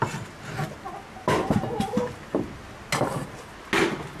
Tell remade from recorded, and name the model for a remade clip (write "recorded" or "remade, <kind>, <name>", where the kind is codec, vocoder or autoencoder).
recorded